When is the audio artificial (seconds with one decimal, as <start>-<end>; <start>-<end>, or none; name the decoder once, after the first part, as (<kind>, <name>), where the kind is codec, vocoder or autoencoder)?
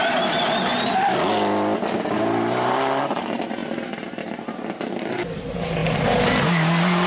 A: none